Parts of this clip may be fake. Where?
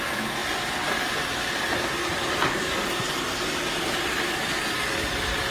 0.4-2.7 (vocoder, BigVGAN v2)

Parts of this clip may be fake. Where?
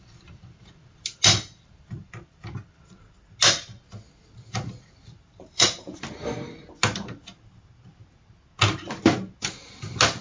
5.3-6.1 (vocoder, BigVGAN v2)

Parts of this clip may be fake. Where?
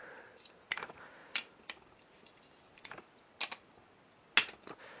1.2-3.0 (vocoder, BigVGAN v2)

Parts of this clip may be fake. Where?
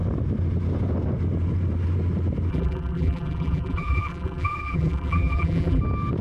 2.5-5.8 (vocoder, BigVGAN v2)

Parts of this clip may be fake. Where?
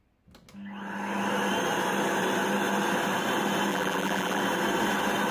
3.7-4.4 (vocoder, BigVGAN v2)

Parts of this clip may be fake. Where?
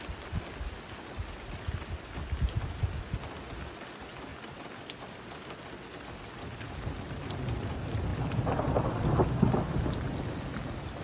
4.3-5.0 (vocoder, BigVGAN v2)